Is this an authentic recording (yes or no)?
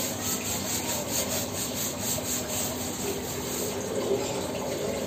yes